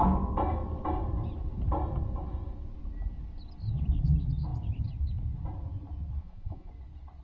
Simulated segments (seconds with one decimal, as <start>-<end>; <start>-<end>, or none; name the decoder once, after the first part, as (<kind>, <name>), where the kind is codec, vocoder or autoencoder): 6.2-6.7 (vocoder, Vocos)